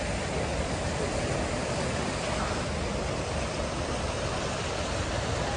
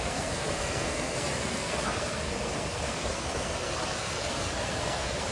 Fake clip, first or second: second